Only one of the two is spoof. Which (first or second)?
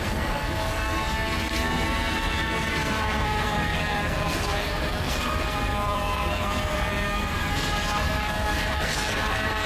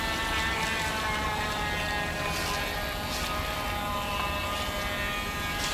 first